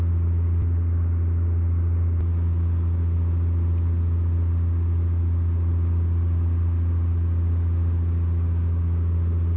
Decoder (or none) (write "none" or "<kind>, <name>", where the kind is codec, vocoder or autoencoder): none